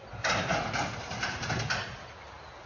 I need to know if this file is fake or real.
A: real